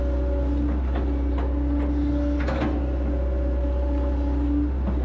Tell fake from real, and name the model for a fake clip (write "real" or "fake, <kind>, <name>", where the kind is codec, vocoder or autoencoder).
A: real